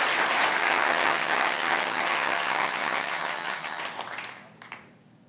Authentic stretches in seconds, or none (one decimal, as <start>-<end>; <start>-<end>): 0.0-0.6; 3.8-5.3